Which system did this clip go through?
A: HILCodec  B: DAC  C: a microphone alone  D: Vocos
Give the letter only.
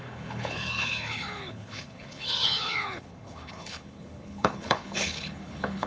A